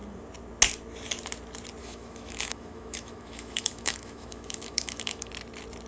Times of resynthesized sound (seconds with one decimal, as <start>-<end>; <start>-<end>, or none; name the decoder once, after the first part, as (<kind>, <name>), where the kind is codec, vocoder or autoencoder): 1.8-5.3 (autoencoder, DAC-VAE)